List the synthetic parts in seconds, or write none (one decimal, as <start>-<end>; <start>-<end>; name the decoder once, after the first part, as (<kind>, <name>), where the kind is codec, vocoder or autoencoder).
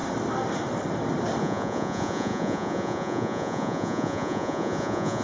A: 1.4-5.2 (vocoder, Vocos)